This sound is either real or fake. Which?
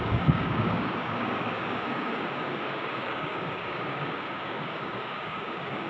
fake